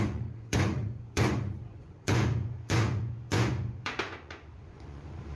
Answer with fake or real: fake